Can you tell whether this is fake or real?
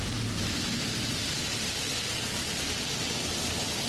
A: real